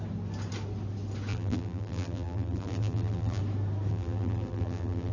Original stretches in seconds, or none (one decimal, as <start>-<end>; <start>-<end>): 0.0-1.3; 3.4-3.9